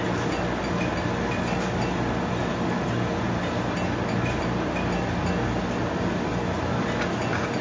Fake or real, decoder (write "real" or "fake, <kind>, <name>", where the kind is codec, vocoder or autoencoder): real